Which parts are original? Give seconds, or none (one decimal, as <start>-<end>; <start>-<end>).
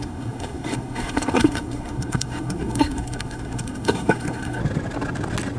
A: 4.6-5.6